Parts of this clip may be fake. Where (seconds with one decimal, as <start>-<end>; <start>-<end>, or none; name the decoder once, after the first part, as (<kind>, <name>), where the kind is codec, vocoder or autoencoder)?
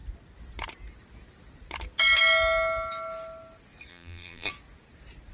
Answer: 3.9-4.5 (vocoder, BigVGAN v2)